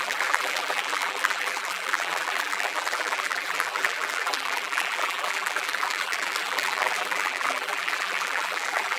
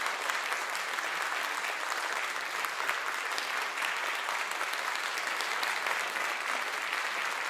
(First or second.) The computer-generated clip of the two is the first